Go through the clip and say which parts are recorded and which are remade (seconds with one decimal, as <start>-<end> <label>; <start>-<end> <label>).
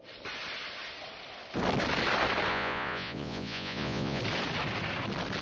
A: 0.0-2.5 recorded; 2.5-4.2 remade; 4.2-5.4 recorded